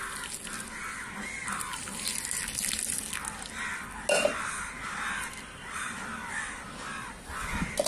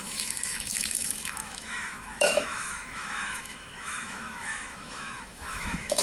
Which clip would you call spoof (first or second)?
second